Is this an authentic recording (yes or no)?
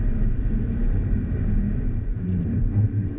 no